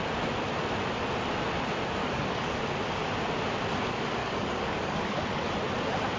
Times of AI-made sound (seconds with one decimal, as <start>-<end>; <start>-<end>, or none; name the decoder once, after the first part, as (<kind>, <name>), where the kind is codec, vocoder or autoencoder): 2.0-2.6 (codec, DAC); 4.2-5.5